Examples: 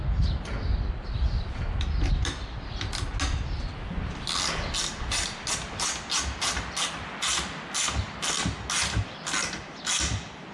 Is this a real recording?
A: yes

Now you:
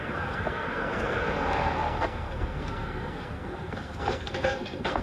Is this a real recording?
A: no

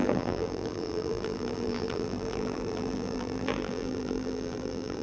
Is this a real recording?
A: no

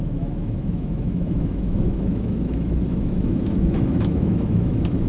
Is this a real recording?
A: no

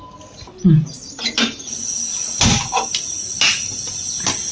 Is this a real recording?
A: yes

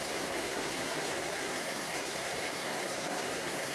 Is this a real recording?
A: no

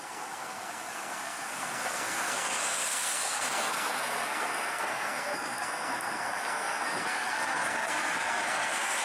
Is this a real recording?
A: no